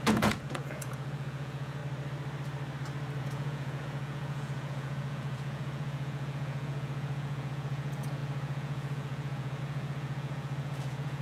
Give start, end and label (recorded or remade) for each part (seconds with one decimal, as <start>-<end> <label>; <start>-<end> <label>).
0.0-1.8 remade; 1.8-3.2 recorded; 3.2-11.2 remade